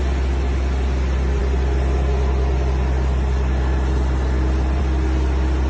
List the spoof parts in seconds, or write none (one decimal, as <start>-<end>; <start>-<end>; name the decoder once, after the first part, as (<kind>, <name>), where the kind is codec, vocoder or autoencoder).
none